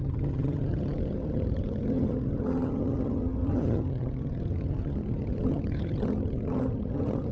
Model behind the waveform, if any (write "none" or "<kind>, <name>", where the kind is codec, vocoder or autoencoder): vocoder, HiFi-GAN